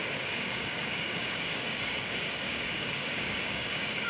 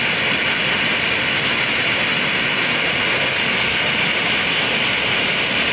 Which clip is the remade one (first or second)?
first